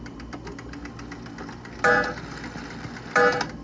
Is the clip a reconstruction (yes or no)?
no